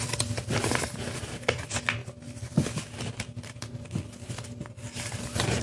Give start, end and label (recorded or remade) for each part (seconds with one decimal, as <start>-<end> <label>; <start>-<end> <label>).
0.0-5.6 recorded